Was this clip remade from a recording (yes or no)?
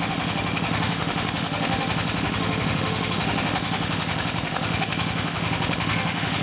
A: yes